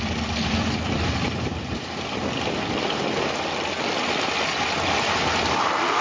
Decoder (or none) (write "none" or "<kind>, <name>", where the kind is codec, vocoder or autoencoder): none